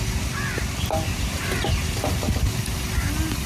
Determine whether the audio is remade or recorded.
recorded